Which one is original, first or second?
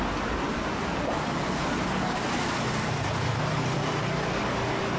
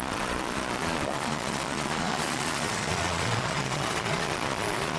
first